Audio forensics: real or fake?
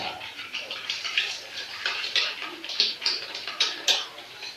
fake